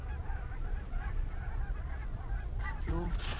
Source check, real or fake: fake